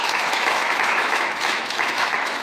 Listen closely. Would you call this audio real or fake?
fake